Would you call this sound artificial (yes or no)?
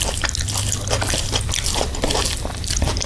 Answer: no